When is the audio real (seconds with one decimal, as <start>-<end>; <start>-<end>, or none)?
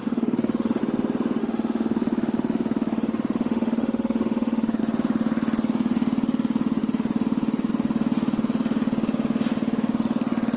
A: 0.8-1.4; 4.8-10.6